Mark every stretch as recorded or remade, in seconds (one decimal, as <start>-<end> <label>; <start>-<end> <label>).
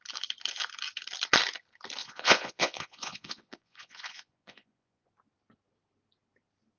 0.0-2.0 recorded; 2.0-5.1 remade; 5.1-6.8 recorded